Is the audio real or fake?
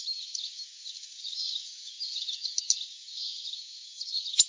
fake